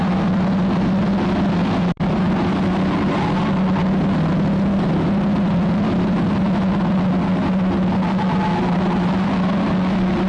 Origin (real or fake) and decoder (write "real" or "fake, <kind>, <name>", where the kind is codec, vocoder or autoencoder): real